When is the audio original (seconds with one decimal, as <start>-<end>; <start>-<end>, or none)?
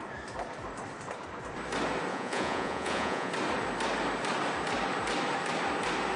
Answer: 0.0-2.1; 3.3-6.2